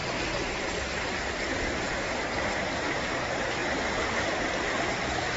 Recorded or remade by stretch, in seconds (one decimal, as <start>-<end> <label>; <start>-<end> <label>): 0.0-5.4 recorded